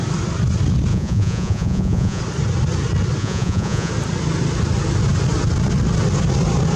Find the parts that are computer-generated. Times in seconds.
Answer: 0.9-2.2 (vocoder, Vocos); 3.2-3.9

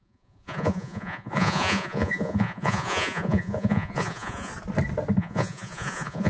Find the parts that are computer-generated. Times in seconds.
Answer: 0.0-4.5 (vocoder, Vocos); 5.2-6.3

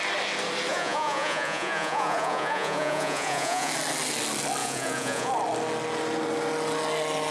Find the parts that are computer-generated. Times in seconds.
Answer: 0.7-3.7 (vocoder, Vocos); 4.6-5.3

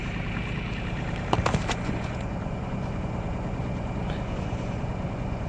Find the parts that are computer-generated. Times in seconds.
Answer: 1.7-5.5 (vocoder, Vocos)